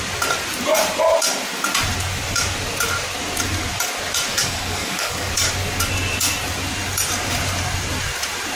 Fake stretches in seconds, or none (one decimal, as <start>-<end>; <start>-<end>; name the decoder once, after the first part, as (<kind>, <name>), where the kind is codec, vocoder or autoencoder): 4.3-5.3 (codec, DAC)